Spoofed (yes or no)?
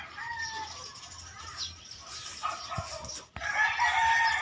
no